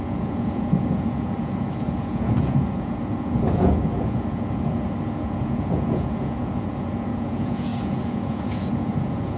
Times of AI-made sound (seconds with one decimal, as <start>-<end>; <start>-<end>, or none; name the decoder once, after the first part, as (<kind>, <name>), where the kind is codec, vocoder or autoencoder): 0.0-9.4 (vocoder, Vocos)